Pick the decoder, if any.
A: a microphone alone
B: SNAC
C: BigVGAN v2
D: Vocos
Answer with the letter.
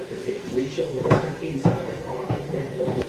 B